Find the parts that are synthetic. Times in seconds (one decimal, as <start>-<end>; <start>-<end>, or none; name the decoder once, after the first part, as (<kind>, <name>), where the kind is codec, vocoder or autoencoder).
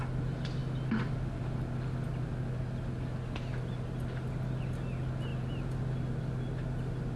none